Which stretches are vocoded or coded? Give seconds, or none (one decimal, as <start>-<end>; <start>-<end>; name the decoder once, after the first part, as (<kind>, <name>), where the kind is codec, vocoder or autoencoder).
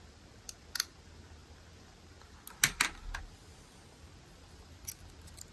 none